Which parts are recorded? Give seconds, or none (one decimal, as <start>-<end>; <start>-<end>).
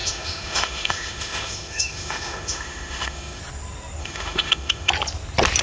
3.4-4.0; 4.9-5.6